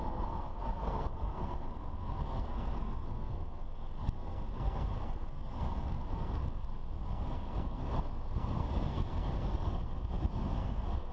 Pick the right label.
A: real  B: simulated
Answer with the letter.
B